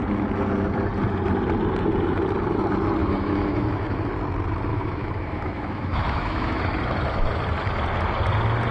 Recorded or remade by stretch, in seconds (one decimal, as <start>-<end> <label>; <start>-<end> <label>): 0.0-3.0 recorded; 3.0-4.1 remade; 4.1-4.7 recorded; 4.7-6.6 remade; 6.6-8.7 recorded